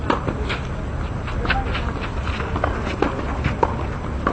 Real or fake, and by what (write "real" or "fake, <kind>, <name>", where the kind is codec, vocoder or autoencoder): real